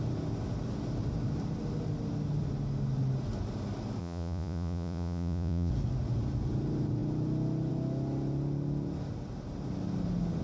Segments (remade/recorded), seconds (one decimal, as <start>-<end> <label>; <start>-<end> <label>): 0.0-4.0 recorded; 4.0-5.7 remade; 5.7-10.4 recorded